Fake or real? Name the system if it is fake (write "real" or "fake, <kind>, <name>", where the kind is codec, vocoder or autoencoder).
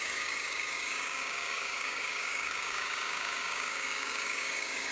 fake, codec, DAC